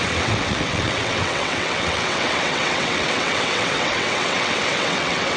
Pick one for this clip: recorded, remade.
remade